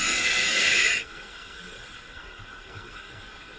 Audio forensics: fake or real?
fake